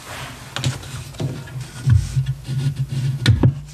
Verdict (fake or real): real